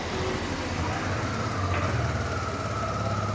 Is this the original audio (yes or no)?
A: yes